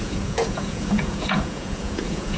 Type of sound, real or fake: fake